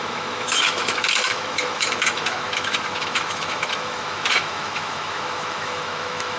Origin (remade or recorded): remade